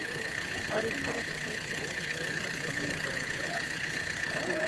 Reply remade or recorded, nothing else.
remade